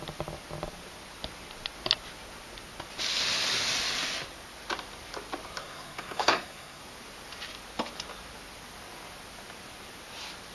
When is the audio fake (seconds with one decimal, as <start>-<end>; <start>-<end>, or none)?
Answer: 5.6-6.8